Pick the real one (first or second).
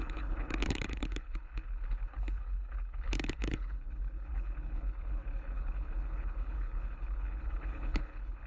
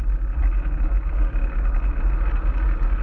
second